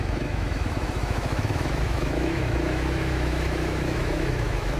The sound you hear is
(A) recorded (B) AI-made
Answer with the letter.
B